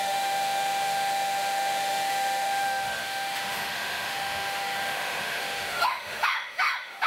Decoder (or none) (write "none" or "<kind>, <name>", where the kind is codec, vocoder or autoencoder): autoencoder, DAC-VAE